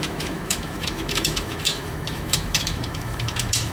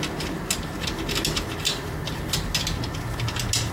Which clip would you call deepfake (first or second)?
first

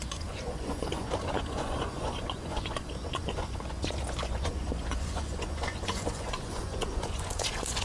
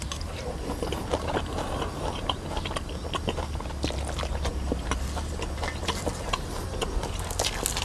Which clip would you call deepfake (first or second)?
first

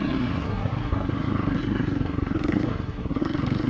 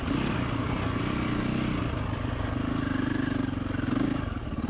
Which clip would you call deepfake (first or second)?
first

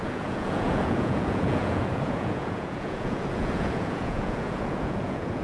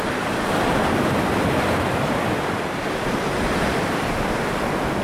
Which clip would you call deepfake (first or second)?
first